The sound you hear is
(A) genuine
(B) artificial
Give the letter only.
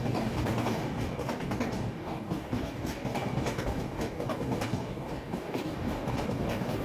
B